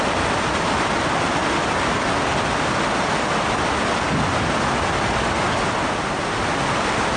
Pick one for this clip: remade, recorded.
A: recorded